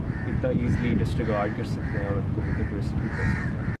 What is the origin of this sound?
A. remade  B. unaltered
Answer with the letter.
B